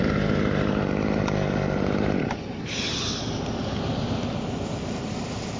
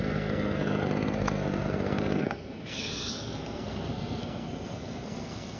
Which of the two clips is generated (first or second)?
second